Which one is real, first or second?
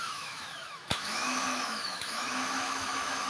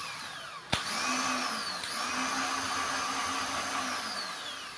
second